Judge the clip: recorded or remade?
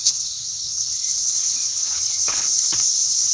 remade